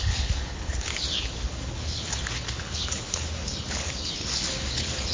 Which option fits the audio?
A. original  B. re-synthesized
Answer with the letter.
B